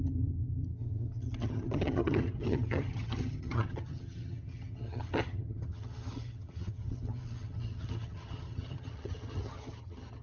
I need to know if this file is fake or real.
fake